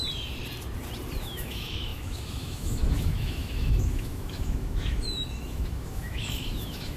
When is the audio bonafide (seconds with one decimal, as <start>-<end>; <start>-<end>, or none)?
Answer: 0.0-1.2